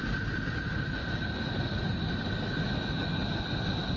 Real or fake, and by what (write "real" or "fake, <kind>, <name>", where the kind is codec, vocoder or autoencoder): real